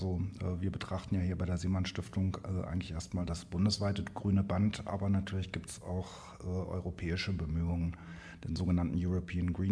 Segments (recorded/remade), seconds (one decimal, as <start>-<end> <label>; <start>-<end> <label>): 0.0-2.1 recorded; 2.1-4.0 remade; 4.0-9.7 recorded